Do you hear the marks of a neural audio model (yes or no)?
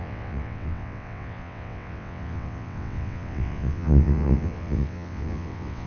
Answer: yes